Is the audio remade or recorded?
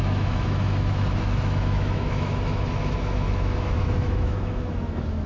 remade